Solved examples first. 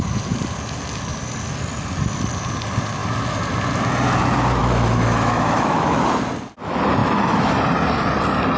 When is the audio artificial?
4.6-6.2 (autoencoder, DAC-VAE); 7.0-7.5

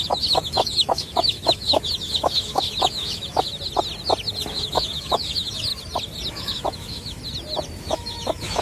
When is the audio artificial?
0.0-3.5 (autoencoder, DAC-VAE); 4.5-5.7; 6.3-7.2; 7.8-8.6

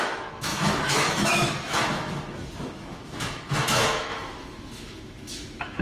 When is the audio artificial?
0.0-5.8 (autoencoder, DAC-VAE)

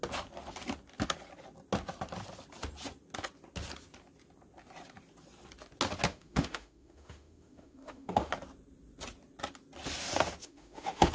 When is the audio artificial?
6.1-8.3 (autoencoder, DAC-VAE); 10.4-11.1

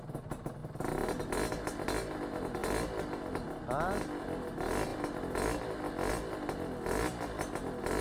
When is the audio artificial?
none